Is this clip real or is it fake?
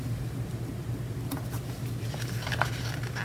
real